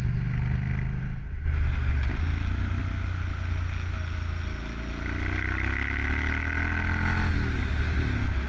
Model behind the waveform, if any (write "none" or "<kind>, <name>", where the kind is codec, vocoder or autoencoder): none